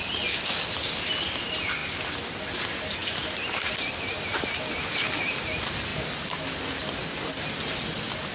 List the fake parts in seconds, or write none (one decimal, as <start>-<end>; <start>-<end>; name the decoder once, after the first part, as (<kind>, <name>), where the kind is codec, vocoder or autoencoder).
none